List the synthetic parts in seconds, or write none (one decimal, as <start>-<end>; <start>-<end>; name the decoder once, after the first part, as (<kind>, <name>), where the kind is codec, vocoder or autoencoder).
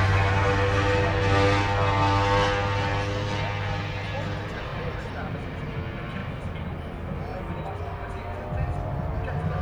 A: 4.7-5.7 (vocoder, BigVGAN v2); 7.3-8.1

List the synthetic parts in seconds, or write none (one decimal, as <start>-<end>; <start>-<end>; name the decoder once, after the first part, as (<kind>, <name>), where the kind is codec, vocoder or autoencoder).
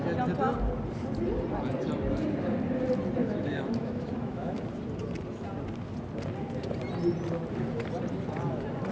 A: 3.2-4.6 (autoencoder, DAC-VAE)